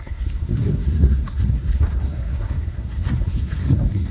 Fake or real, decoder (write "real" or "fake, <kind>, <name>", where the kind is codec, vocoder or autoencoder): fake, codec, SNAC